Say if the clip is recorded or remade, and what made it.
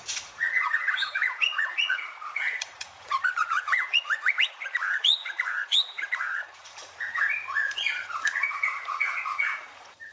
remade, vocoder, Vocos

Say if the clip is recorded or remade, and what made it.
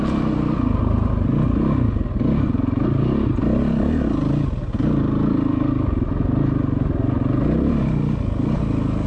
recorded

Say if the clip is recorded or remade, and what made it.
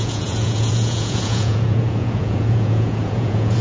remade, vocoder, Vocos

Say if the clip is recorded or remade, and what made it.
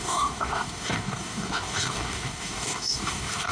remade, codec, DAC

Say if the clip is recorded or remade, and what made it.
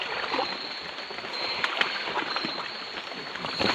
recorded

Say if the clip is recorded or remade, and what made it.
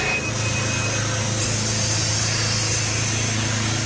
recorded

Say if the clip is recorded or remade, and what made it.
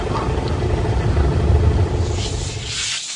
recorded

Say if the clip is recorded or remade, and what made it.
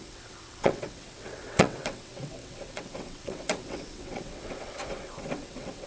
remade, vocoder, WaveNeXt